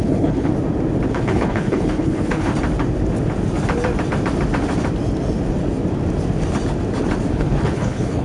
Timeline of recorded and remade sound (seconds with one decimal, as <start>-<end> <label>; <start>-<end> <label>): 0.0-0.5 remade; 0.5-1.1 recorded; 1.1-2.5 remade; 2.5-7.3 recorded; 7.3-8.2 remade